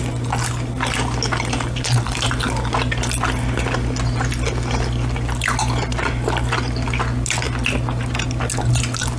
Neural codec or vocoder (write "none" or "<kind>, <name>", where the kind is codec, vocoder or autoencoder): none